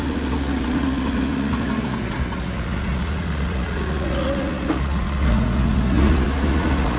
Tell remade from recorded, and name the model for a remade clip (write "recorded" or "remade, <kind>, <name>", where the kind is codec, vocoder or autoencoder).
remade, vocoder, Vocos